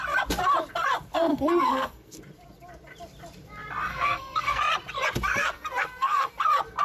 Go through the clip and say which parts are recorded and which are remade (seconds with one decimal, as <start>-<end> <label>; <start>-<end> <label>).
0.0-1.3 recorded; 1.3-2.2 remade; 2.2-3.9 recorded; 3.9-4.6 remade; 4.6-5.4 recorded; 5.4-6.3 remade; 6.3-6.8 recorded